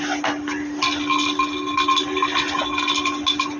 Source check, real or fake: real